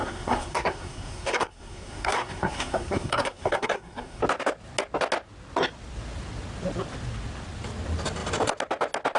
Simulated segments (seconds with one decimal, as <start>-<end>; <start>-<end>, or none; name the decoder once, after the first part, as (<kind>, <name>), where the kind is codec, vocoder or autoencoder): 0.0-4.2 (codec, SNAC)